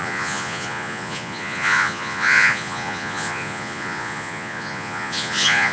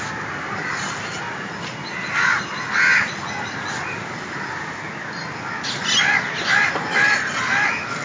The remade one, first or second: first